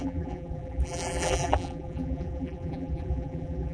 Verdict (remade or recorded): remade